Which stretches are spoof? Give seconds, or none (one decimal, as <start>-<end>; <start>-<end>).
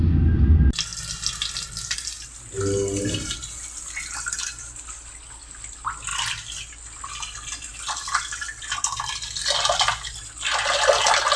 none